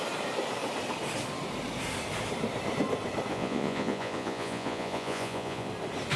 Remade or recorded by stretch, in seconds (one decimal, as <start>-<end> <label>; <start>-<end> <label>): 0.0-3.3 recorded; 3.3-5.7 remade; 5.7-6.2 recorded